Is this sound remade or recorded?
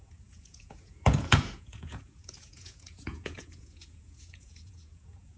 remade